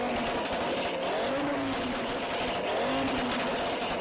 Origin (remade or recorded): recorded